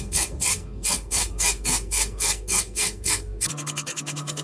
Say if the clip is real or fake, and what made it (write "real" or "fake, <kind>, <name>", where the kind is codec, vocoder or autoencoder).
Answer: fake, codec, SNAC